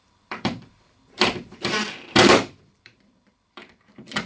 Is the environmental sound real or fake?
fake